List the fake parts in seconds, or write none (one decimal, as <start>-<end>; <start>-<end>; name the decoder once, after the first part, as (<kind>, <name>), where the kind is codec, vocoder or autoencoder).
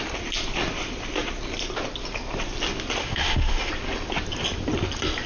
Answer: 3.0-3.7 (autoencoder, DAC-VAE)